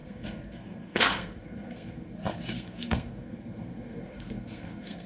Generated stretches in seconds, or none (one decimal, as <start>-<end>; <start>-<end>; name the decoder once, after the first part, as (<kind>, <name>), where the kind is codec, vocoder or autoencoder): 0.0-5.1 (codec, SNAC)